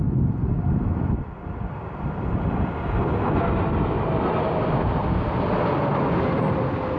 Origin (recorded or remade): recorded